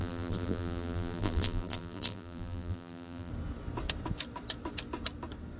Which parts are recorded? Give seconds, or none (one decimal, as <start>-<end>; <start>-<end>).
3.3-5.6